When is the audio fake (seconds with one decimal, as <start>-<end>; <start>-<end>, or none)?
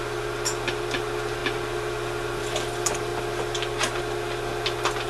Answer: none